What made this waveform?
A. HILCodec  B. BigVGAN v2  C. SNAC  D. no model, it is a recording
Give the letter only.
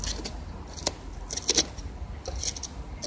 D